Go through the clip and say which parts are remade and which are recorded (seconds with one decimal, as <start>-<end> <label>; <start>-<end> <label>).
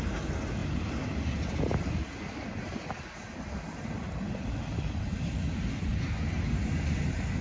0.0-7.4 recorded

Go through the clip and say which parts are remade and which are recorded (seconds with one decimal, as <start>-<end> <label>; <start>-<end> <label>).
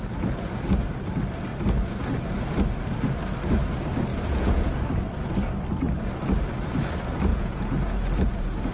0.0-4.1 recorded; 4.1-4.8 remade; 4.8-7.3 recorded; 7.3-8.7 remade